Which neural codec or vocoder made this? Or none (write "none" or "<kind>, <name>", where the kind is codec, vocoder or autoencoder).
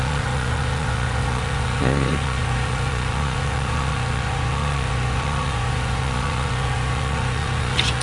vocoder, Vocos